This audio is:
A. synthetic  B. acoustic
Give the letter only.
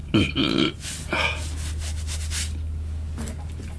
B